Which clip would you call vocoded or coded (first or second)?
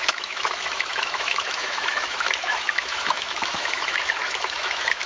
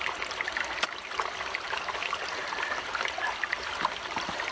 first